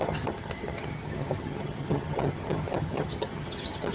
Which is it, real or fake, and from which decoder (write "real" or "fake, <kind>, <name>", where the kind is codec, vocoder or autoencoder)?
fake, vocoder, HiFi-GAN